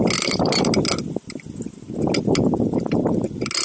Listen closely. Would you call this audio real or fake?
real